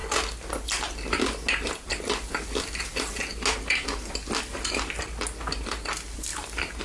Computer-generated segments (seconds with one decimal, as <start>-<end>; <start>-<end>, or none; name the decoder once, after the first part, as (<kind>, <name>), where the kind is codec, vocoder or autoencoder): none